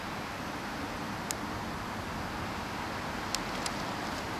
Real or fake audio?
real